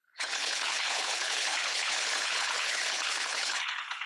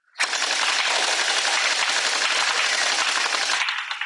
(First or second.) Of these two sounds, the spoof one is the first